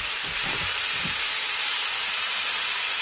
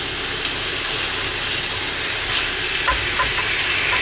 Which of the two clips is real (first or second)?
second